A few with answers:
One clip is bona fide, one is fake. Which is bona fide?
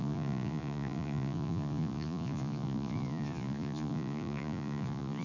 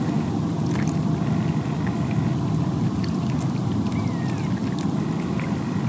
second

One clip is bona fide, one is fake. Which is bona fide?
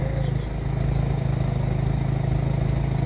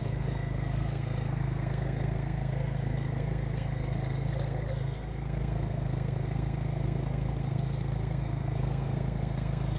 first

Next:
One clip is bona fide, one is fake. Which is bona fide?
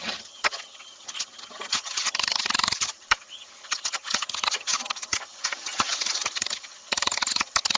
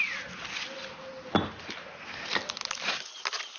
second